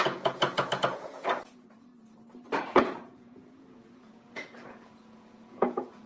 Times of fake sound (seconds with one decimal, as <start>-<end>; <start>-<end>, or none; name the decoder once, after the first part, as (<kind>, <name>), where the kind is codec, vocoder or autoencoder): 0.0-1.9 (vocoder, Vocos); 2.6-6.1